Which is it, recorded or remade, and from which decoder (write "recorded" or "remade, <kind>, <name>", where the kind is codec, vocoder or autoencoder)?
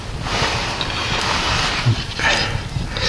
recorded